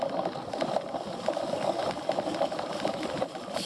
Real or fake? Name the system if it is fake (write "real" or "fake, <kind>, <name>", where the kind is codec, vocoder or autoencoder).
real